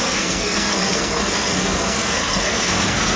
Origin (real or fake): fake